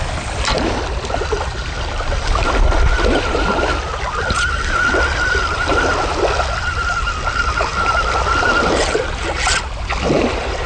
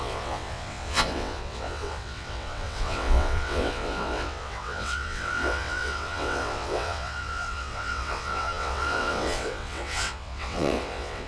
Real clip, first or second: first